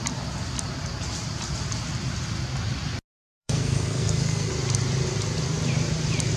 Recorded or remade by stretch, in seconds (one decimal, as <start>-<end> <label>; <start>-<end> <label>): 0.0-3.4 recorded; 3.4-4.5 remade; 4.5-6.4 recorded